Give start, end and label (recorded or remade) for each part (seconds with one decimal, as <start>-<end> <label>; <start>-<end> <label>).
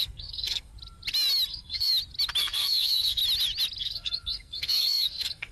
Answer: 0.0-0.7 remade; 0.7-1.5 recorded; 1.5-1.9 remade; 1.9-2.4 recorded; 2.4-3.2 remade; 3.2-3.8 recorded; 3.8-5.5 remade